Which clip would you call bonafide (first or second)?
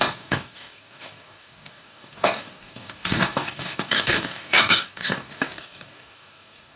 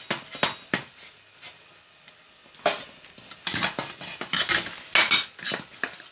second